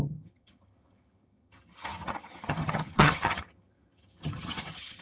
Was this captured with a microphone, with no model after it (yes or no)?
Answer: no